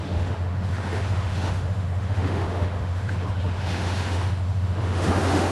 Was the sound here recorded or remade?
remade